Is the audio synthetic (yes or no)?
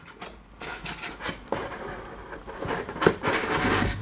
no